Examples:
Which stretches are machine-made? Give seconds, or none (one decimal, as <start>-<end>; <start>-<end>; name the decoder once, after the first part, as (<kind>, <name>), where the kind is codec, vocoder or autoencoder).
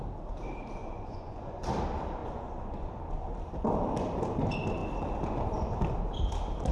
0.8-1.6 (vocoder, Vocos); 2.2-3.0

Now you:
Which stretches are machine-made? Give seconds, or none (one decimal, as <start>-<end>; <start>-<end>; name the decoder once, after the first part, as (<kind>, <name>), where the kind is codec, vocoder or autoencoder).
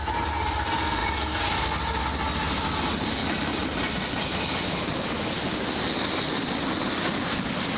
none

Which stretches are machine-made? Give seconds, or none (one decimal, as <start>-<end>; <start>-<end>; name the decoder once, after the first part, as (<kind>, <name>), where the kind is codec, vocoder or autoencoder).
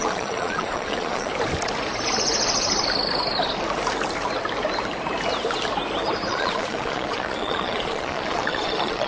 0.0-1.3 (vocoder, Vocos); 6.3-9.1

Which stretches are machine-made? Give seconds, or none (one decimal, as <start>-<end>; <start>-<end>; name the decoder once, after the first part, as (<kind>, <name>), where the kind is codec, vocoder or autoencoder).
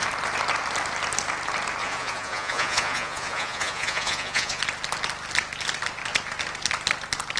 1.8-4.6 (vocoder, Vocos)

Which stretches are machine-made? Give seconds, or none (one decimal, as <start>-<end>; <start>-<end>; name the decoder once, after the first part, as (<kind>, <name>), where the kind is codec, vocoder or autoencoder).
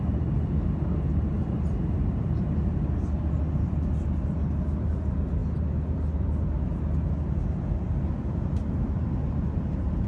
none